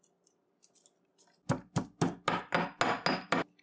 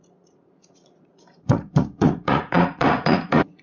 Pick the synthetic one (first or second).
second